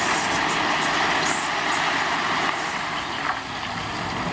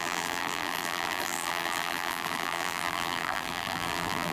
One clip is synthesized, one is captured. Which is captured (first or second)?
first